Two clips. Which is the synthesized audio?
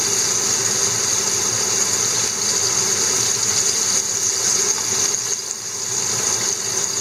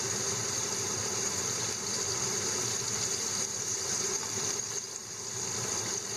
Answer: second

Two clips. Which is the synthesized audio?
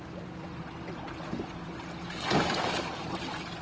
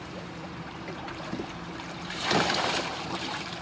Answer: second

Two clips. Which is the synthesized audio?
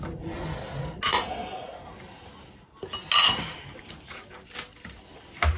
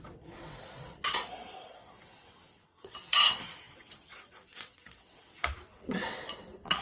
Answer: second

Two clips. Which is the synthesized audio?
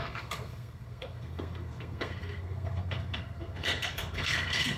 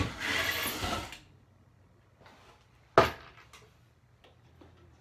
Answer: first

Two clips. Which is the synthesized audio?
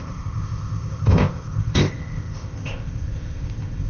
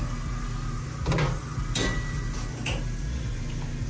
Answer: first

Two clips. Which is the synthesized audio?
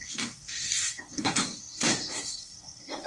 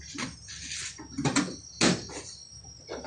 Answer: first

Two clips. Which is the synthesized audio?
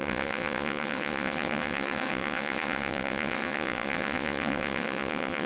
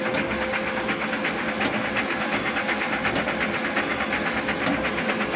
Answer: first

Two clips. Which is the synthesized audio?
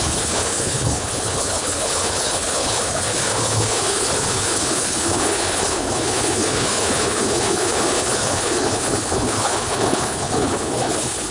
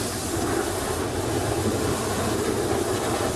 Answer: first